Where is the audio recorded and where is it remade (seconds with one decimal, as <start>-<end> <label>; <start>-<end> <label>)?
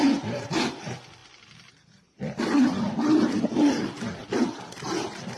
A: 0.0-1.2 recorded; 1.2-4.4 remade; 4.4-5.4 recorded